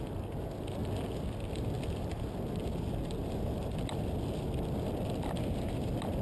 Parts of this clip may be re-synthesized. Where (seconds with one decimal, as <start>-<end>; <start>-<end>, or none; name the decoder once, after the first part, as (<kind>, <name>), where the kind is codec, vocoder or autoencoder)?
none